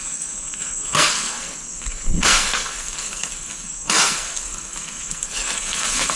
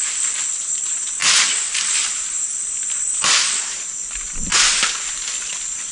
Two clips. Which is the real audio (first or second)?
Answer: second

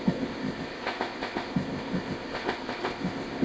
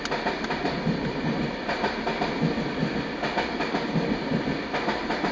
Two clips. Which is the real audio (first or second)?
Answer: second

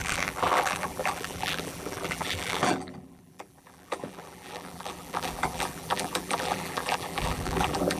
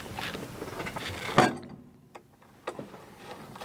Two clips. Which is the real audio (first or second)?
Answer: second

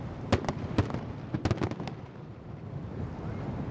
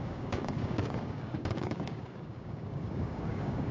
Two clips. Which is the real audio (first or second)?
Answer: first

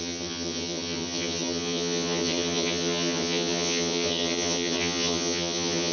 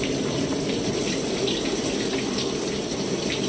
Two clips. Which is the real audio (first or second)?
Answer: second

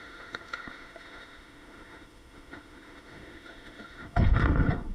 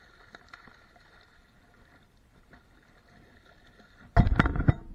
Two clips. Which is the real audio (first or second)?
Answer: second